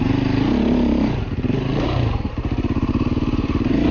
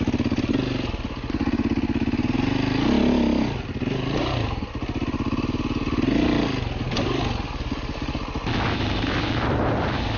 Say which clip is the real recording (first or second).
second